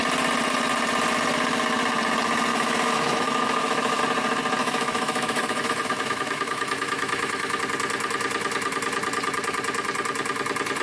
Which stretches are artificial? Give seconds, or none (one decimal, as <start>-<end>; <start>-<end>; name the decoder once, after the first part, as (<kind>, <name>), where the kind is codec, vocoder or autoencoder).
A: 2.5-4.0 (autoencoder, DAC-VAE); 4.6-7.6